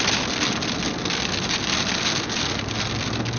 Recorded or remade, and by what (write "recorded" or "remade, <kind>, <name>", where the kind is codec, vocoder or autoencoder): recorded